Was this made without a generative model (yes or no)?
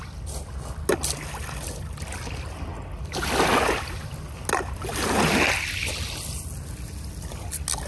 yes